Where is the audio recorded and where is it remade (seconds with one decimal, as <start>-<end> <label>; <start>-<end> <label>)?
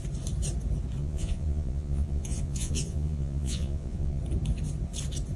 0.0-1.0 recorded; 1.0-4.2 remade; 4.2-5.4 recorded